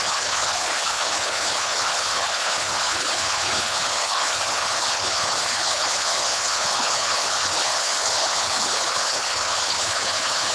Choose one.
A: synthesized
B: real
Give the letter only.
A